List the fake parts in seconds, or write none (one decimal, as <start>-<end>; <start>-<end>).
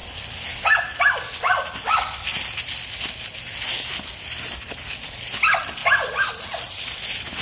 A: none